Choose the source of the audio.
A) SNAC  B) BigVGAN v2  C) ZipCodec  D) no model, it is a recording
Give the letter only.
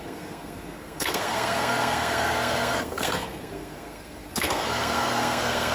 A